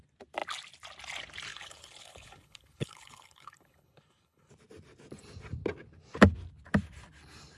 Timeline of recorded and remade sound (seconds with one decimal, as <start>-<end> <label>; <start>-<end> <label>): 0.0-1.5 recorded; 1.5-4.5 remade; 4.5-7.6 recorded